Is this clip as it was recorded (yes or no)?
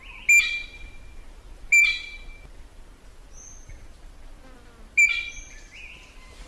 yes